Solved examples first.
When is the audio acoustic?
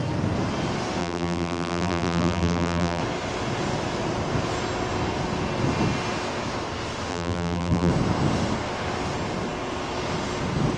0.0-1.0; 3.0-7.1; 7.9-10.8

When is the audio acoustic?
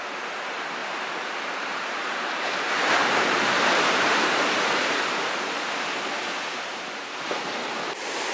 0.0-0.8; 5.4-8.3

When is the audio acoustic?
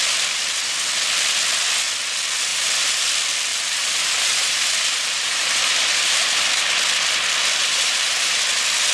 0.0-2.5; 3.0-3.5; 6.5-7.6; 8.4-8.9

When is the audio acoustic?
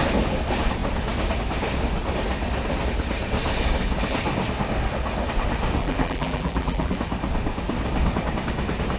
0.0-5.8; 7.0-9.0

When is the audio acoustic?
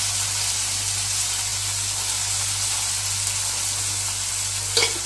0.0-5.1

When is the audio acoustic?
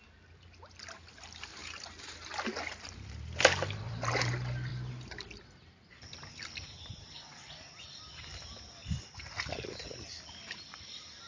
1.6-3.8; 4.7-7.0